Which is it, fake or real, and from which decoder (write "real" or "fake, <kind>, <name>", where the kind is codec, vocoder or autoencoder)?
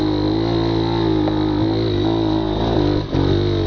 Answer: real